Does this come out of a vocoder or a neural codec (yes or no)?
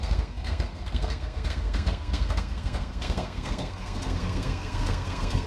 yes